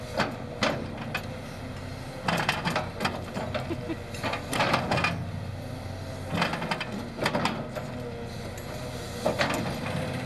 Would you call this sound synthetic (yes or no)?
no